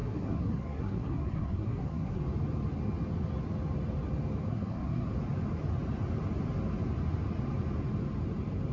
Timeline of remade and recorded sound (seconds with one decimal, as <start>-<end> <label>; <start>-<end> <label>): 0.0-2.2 remade; 2.2-4.5 recorded; 4.5-5.1 remade; 5.1-8.7 recorded